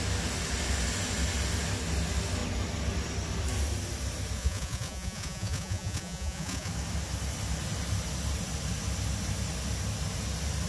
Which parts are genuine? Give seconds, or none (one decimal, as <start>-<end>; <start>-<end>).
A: 0.0-4.4; 6.7-10.7